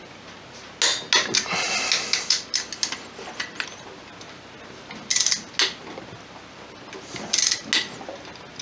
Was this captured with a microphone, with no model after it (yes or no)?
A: yes